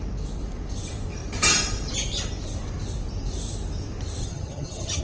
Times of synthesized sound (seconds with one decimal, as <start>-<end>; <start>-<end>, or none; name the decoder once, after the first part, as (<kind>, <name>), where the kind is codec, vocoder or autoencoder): 4.2-5.0 (vocoder, HiFi-GAN)